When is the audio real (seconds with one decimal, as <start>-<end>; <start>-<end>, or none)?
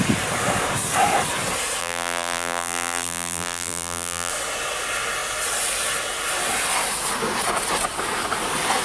0.0-1.8; 4.3-8.8